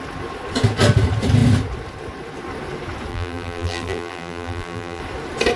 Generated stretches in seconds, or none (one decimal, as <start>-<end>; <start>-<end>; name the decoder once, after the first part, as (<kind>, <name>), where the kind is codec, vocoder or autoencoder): 3.1-5.0 (vocoder, BigVGAN v2)